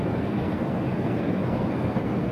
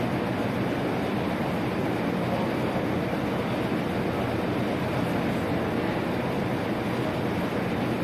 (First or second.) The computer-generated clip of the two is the first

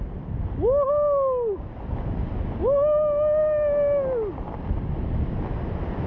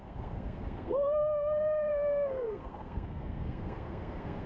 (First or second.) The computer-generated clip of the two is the second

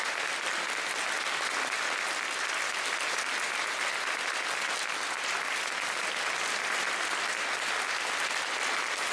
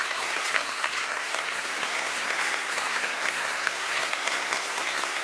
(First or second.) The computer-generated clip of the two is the second